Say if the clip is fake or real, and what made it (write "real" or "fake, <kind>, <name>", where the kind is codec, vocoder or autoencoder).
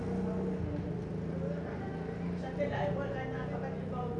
real